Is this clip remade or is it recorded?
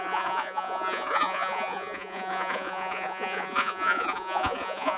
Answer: remade